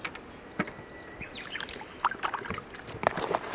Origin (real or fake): real